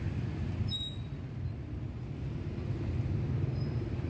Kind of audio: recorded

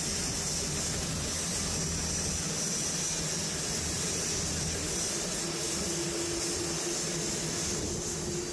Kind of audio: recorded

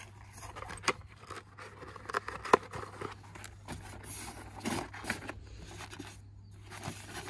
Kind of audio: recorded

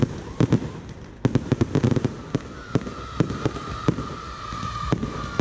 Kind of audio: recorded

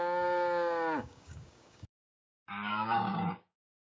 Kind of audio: remade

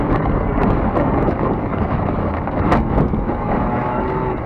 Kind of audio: remade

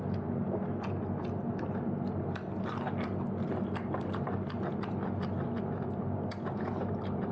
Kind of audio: recorded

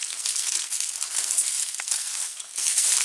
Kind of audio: remade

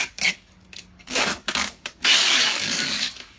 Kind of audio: remade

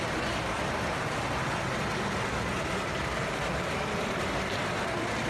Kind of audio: recorded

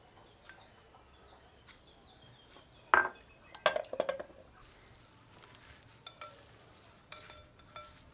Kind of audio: recorded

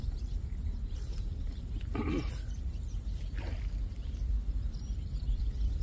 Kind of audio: remade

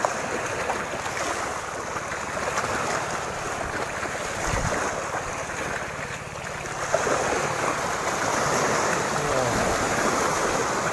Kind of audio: recorded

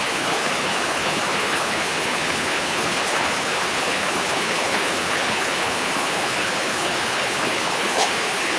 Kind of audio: remade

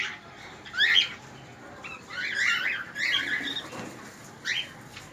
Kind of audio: recorded